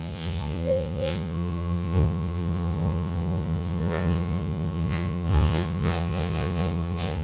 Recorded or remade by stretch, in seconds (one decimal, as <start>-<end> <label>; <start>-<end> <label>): 0.0-7.2 remade